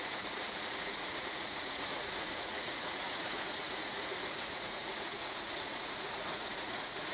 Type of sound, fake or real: fake